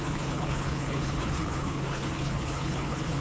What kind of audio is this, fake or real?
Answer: fake